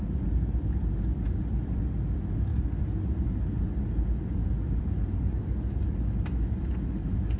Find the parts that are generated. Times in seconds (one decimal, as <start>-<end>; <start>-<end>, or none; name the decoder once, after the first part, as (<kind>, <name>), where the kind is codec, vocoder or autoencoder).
none